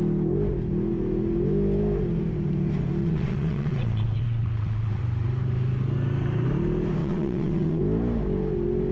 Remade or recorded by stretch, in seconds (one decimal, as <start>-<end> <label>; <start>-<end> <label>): 0.0-3.0 recorded; 3.0-5.0 remade; 5.0-7.0 recorded; 7.0-7.8 remade; 7.8-8.9 recorded